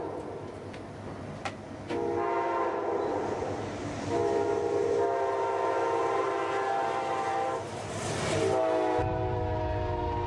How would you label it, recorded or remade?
recorded